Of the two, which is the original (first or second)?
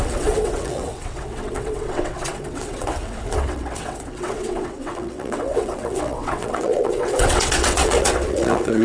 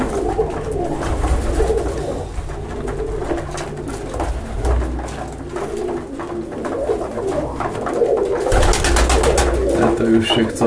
second